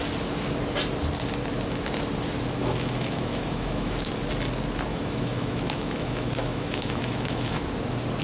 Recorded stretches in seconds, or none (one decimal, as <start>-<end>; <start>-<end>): 0.0-2.6; 4.1-4.9; 7.6-8.2